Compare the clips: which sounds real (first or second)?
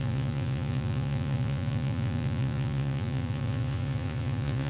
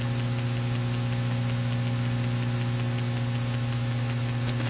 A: second